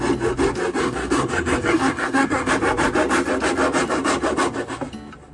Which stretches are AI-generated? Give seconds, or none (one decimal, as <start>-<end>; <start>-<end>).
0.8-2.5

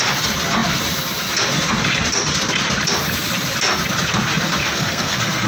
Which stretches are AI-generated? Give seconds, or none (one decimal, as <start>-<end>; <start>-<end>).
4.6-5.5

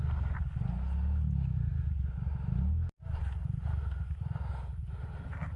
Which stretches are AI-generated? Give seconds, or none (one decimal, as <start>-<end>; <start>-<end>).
none

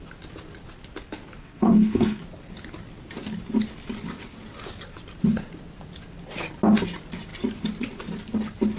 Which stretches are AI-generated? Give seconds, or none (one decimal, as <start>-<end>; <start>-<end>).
1.4-2.2